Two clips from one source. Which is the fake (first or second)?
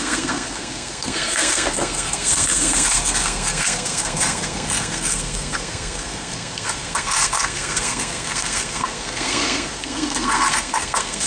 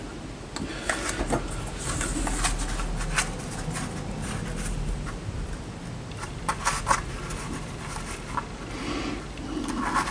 first